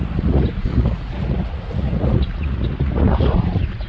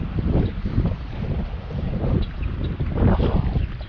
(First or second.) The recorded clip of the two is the second